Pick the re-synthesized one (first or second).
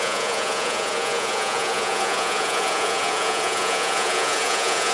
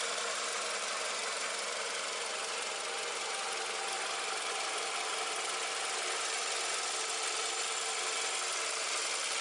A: first